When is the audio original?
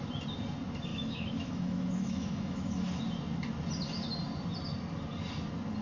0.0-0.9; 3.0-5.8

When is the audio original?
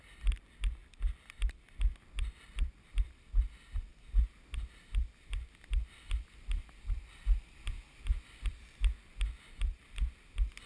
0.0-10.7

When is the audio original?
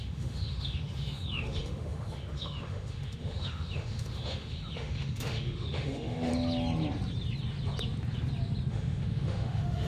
6.3-8.7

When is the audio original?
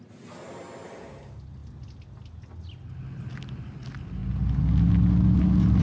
0.0-5.8